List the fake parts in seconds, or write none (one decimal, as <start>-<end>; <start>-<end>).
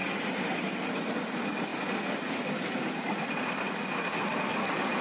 0.0-0.7